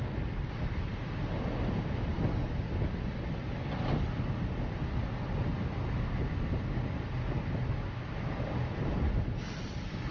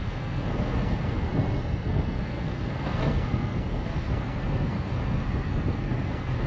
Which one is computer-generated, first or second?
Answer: second